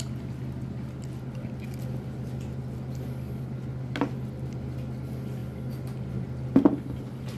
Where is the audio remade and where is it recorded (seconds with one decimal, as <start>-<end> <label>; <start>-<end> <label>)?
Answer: 0.0-7.4 recorded